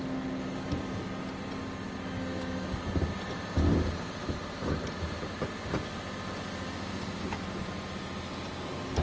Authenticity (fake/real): real